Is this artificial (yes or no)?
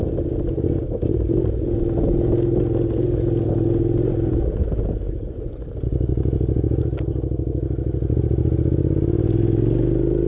no